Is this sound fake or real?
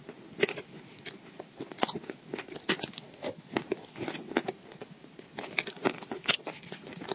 real